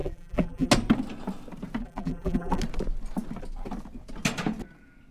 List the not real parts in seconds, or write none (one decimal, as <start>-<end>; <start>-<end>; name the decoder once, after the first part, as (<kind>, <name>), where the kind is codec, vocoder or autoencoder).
0.0-0.7 (vocoder, BigVGAN v2); 1.8-2.6